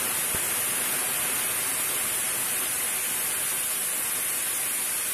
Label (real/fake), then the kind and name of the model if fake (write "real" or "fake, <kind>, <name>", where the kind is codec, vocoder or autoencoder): real